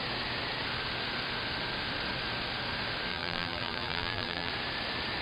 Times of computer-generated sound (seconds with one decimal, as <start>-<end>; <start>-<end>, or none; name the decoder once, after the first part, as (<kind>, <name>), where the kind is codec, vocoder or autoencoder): 3.1-4.5 (vocoder, BigVGAN v2)